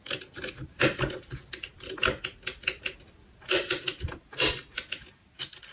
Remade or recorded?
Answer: recorded